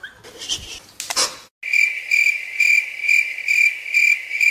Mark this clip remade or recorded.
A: recorded